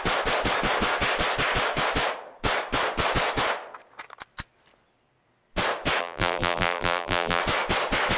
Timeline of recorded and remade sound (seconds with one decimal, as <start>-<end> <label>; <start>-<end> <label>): 0.0-6.0 recorded; 6.0-7.4 remade; 7.4-8.2 recorded